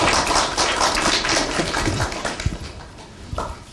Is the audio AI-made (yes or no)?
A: no